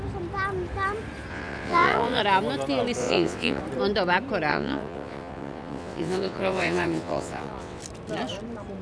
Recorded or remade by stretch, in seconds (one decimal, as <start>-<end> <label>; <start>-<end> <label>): 0.0-1.3 recorded; 1.3-2.2 remade; 2.2-3.0 recorded; 3.0-3.6 remade; 3.6-4.5 recorded; 4.5-7.8 remade; 7.8-8.8 recorded